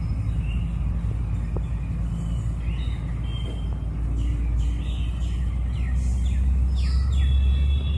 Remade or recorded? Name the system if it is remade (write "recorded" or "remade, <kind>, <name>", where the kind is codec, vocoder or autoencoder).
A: recorded